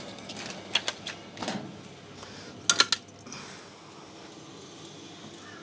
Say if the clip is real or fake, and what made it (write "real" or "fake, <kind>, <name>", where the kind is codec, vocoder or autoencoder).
real